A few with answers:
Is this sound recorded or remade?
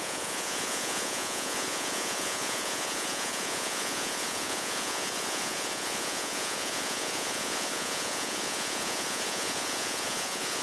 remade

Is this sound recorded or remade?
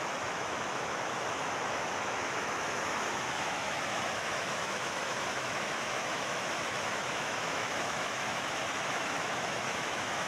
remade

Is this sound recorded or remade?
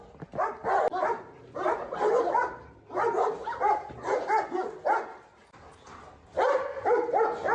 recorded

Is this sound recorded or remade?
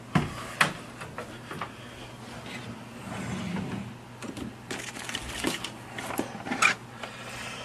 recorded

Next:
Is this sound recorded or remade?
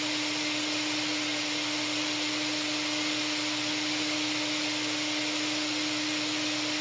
recorded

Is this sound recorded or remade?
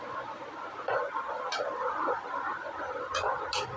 recorded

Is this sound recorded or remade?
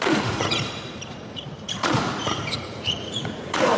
remade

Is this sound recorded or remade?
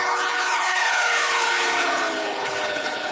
remade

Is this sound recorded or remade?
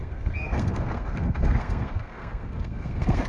remade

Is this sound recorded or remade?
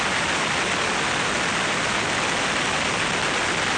recorded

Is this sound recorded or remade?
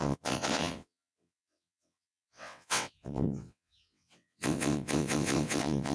remade